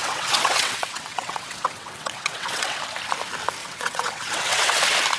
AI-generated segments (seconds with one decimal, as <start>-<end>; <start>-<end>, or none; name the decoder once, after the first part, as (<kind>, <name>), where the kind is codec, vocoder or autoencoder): 0.0-2.8 (vocoder, WaveNeXt); 3.6-4.8